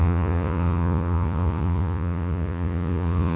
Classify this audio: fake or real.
fake